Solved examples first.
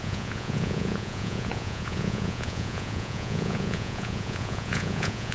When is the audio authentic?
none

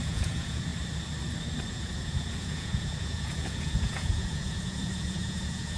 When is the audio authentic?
0.7-1.7

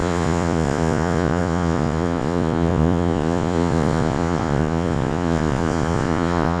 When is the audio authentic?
none

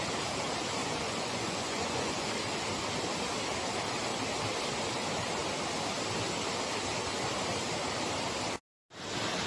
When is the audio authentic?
0.0-0.8; 2.3-9.5

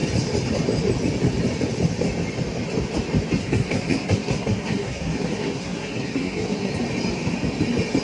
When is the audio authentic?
0.0-3.4; 6.7-8.0

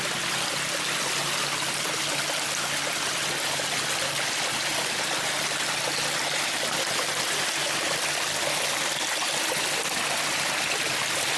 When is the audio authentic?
0.0-11.4